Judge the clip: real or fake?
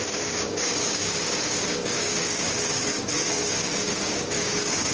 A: fake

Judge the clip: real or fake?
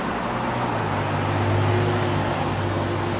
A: real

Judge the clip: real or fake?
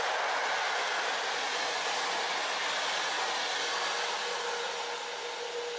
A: real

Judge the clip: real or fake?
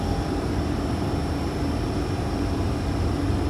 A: fake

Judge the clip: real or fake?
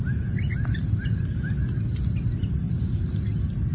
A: real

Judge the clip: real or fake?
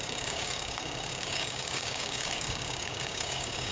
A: fake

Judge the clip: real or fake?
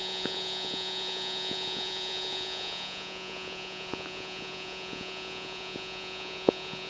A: fake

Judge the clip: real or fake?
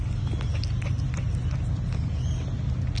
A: real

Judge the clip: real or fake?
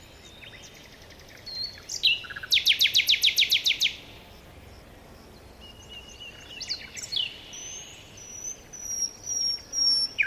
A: real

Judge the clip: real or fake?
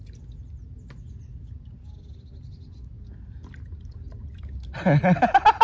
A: real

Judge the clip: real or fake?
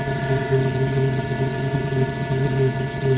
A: fake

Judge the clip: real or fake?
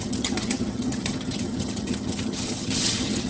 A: fake